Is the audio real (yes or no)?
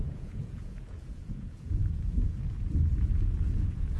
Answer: no